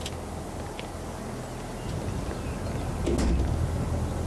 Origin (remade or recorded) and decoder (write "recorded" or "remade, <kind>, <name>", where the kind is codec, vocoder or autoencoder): recorded